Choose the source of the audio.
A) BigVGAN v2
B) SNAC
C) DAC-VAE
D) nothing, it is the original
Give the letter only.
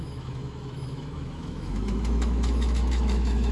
C